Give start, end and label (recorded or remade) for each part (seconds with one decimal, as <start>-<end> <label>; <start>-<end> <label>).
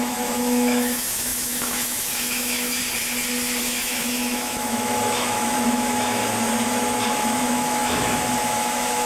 0.0-2.8 remade; 2.8-3.6 recorded; 3.6-6.2 remade; 6.2-7.1 recorded; 7.1-9.1 remade